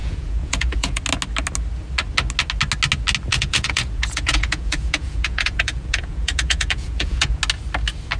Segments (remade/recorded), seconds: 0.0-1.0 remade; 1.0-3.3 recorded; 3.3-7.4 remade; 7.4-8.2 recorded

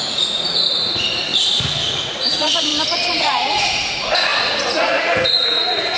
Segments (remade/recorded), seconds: 0.0-1.3 remade; 1.3-1.9 recorded; 1.9-2.7 remade; 2.7-3.2 recorded; 3.2-6.0 remade

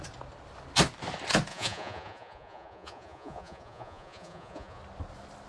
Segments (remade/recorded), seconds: 0.0-1.5 recorded; 1.5-4.8 remade; 4.8-5.5 recorded

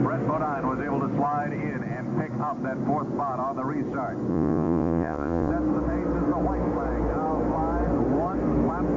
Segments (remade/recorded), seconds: 0.0-4.3 recorded; 4.3-5.5 remade; 5.5-9.0 recorded

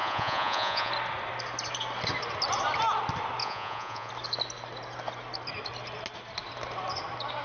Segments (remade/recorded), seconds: 0.0-0.9 remade; 0.9-3.4 recorded; 3.4-4.1 remade; 4.1-7.4 recorded

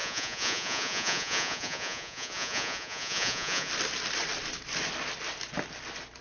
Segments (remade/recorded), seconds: 0.0-3.7 remade; 3.7-6.2 recorded

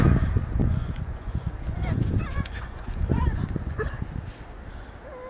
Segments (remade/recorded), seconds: 0.0-0.6 recorded; 0.6-3.8 remade; 3.8-5.3 recorded